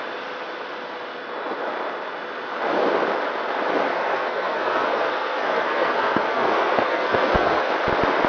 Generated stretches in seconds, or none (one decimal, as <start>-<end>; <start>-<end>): 3.9-7.7